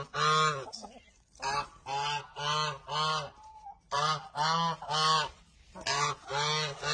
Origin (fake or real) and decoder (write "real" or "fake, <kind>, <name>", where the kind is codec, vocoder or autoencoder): real